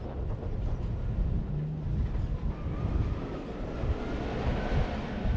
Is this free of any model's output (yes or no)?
yes